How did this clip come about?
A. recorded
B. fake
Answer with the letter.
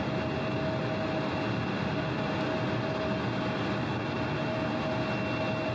A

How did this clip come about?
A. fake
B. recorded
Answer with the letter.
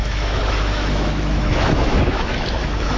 A